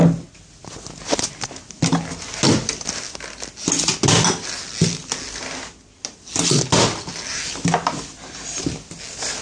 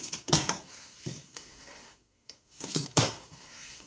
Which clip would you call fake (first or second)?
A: second